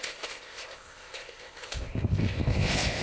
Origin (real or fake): fake